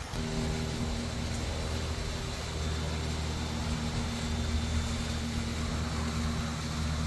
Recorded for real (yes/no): yes